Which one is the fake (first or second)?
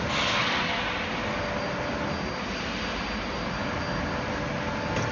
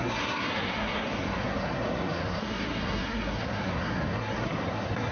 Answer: second